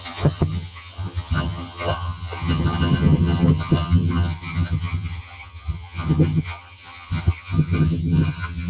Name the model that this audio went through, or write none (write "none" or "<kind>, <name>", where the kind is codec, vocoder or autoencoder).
vocoder, HiFi-GAN